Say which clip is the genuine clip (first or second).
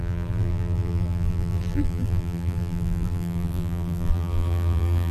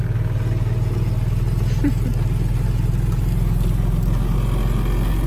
second